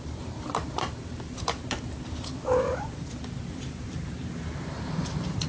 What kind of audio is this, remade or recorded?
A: remade